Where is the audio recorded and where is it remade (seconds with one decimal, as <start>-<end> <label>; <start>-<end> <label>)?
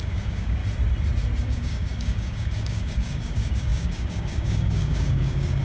0.0-0.6 remade; 0.6-1.4 recorded; 1.4-5.6 remade